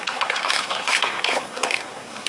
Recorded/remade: remade